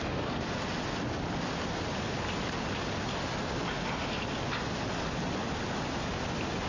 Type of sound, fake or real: real